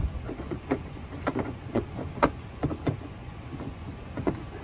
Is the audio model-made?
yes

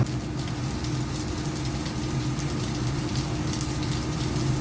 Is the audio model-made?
no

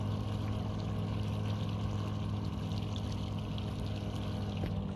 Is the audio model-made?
no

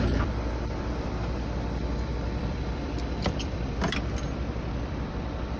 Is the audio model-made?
yes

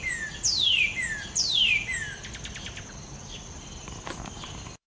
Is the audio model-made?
no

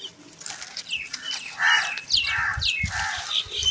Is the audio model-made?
no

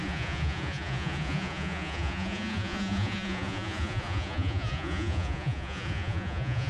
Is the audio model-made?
yes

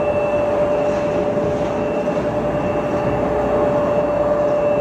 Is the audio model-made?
no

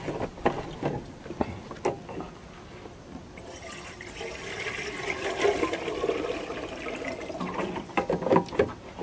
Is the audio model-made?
no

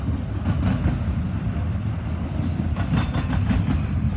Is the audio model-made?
no